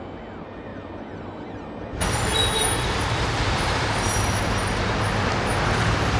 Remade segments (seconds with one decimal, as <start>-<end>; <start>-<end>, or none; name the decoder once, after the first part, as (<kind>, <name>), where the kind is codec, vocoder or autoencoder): 0.7-4.4 (vocoder, BigVGAN v2)